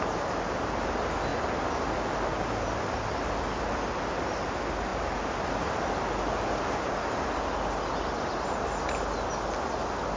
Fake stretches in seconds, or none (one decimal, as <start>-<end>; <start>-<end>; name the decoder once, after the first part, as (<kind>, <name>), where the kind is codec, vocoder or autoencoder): none